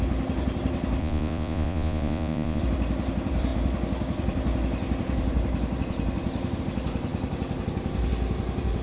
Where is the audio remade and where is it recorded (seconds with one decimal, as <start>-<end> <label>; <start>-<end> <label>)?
0.0-1.0 recorded; 1.0-2.6 remade; 2.6-8.8 recorded